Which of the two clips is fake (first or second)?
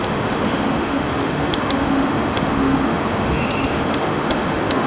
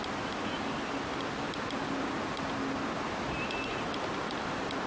first